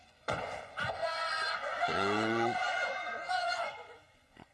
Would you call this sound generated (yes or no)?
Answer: yes